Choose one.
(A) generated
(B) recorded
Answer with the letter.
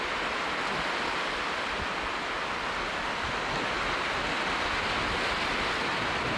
B